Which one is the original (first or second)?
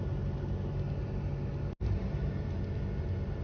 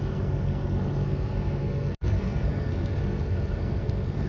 first